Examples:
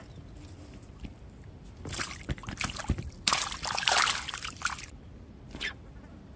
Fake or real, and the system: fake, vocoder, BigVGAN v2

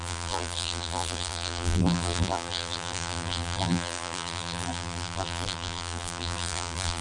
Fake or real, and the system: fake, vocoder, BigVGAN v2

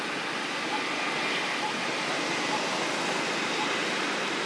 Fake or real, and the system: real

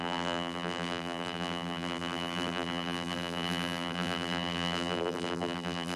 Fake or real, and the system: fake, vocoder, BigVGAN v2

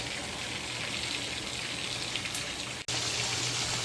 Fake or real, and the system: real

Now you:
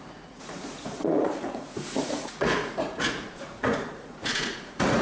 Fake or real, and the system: fake, vocoder, Vocos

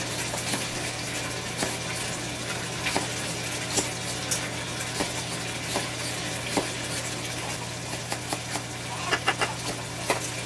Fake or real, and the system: real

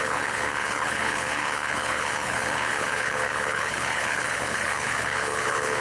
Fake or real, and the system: fake, codec, HILCodec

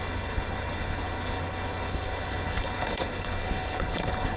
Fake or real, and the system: fake, codec, HILCodec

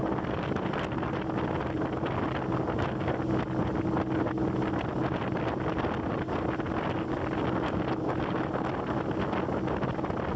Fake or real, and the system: real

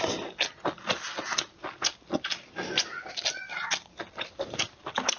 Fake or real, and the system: real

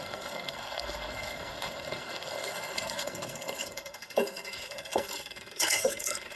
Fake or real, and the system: fake, codec, SNAC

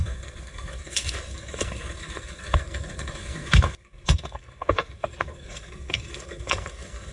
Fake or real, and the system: fake, codec, SNAC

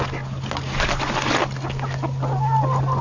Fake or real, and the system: real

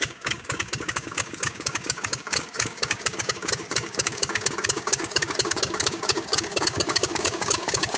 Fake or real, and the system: fake, codec, DAC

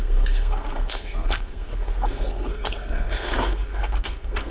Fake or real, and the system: fake, codec, SNAC